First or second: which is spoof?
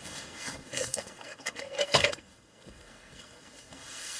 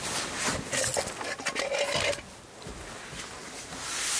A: first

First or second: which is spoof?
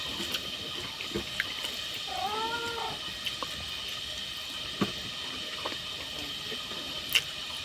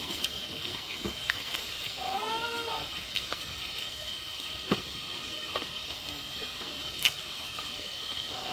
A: second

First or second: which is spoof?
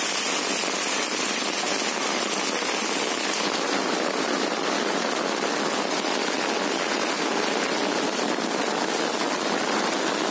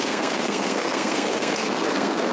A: second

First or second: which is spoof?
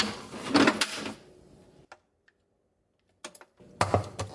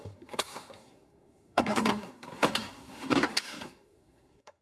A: second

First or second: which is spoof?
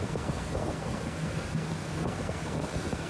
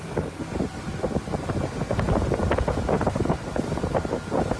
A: first